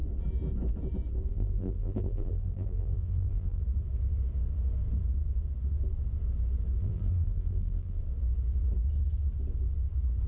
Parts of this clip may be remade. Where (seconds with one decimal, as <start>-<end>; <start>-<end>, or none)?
1.3-3.6; 6.8-8.0